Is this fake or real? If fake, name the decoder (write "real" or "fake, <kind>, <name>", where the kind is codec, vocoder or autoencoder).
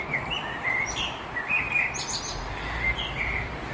real